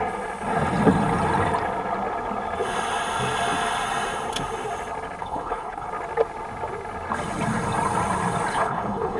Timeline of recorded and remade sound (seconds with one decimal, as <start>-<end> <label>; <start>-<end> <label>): 0.0-5.2 recorded; 5.2-5.9 remade; 5.9-8.5 recorded; 8.5-9.2 remade